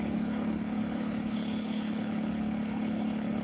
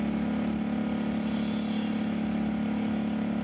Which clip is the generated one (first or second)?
first